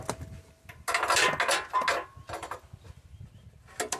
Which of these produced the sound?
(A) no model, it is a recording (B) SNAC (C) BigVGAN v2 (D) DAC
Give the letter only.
A